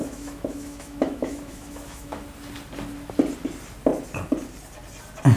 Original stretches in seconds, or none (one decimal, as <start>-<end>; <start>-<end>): 2.2-5.4